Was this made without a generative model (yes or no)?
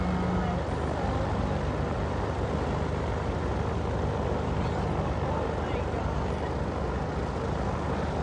yes